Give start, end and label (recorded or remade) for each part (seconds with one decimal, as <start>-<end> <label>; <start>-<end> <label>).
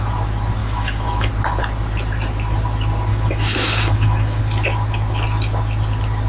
0.0-0.6 recorded; 0.6-1.3 remade; 1.3-3.1 recorded; 3.1-4.4 remade; 4.4-6.3 recorded